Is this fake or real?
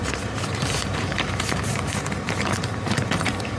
fake